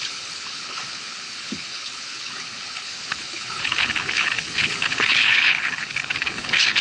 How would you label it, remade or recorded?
remade